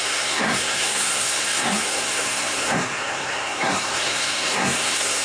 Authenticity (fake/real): fake